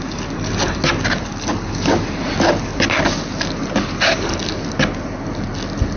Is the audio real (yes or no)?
yes